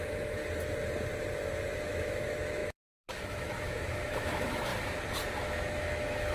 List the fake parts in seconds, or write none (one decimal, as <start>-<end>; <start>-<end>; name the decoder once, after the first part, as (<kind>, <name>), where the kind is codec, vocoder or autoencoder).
0.0-0.4 (autoencoder, DAC-VAE); 1.8-4.7; 5.4-6.3